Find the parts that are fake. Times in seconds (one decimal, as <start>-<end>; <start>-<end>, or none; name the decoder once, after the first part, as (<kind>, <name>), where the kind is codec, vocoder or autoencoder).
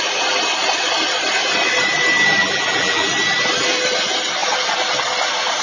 2.4-3.1 (vocoder, BigVGAN v2)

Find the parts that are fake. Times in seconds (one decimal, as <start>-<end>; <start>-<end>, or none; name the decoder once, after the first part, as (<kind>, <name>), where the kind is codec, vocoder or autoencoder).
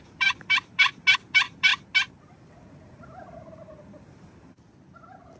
none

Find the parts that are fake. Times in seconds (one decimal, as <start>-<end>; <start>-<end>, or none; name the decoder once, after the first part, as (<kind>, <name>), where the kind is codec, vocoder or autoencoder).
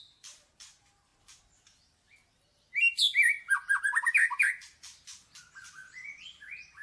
4.4-5.4 (vocoder, BigVGAN v2)